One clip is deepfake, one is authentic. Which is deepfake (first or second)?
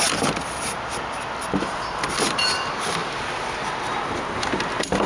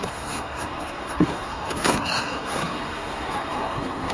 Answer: second